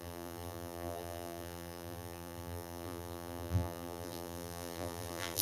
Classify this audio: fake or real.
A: fake